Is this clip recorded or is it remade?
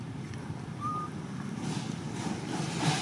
remade